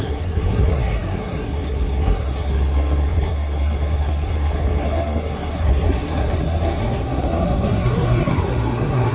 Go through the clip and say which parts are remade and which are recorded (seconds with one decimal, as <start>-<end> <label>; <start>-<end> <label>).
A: 0.0-9.1 remade